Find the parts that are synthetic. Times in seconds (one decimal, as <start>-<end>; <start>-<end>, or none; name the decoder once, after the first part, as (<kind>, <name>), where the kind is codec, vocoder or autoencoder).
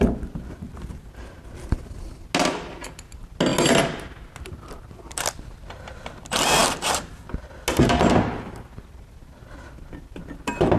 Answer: none